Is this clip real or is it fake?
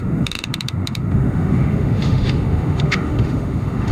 fake